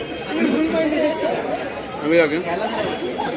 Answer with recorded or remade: recorded